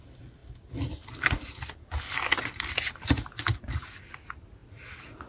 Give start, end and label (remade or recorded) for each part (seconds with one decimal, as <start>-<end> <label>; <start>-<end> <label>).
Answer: 0.0-4.6 recorded; 4.6-5.3 remade